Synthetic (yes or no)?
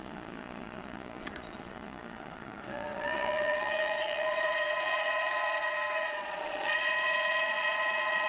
yes